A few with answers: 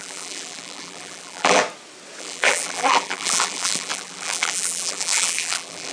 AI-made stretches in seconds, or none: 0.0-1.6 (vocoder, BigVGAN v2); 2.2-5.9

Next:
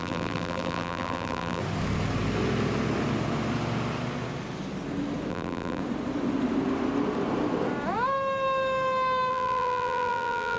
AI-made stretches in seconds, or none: 0.0-1.6 (vocoder, BigVGAN v2); 5.3-5.8; 9.3-10.6

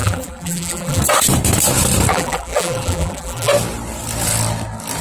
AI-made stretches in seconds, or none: 0.0-1.0 (vocoder, BigVGAN v2); 2.1-3.5

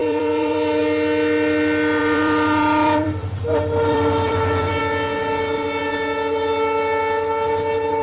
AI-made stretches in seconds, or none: 0.0-0.8 (vocoder, BigVGAN v2); 2.0-4.8

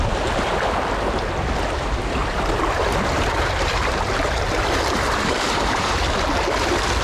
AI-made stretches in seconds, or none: 2.2-5.9 (vocoder, BigVGAN v2)

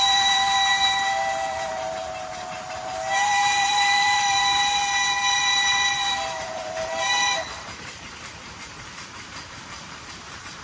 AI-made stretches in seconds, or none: 0.0-4.8 (vocoder, BigVGAN v2); 5.3-10.6

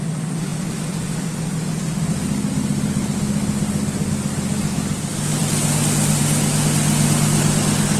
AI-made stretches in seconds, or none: none